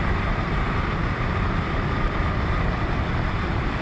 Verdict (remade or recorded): remade